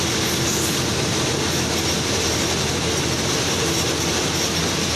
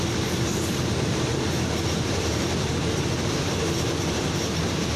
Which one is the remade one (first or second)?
second